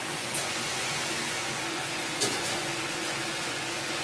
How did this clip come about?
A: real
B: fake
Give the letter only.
B